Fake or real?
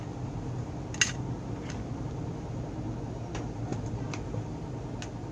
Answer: real